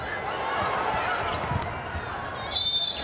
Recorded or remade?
recorded